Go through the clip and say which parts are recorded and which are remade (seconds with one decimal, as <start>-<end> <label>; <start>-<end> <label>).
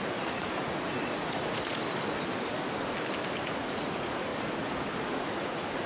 0.0-1.8 remade; 1.8-3.4 recorded; 3.4-4.3 remade; 4.3-5.1 recorded; 5.1-5.9 remade